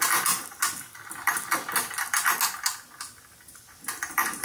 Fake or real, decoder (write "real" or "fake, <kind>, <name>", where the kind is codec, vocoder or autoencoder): real